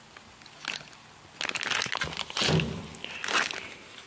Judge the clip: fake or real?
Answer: real